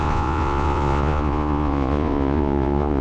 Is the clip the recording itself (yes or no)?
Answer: no